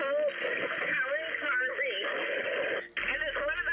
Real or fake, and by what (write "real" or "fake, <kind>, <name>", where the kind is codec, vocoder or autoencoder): real